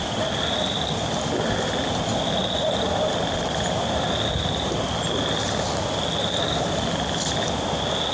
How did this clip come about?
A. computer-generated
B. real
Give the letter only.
B